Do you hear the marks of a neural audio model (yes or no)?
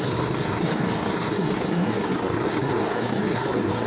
yes